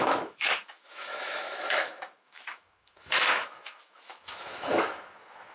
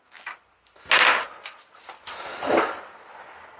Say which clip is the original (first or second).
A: second